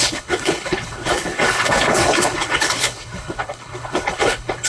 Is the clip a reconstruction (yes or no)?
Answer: yes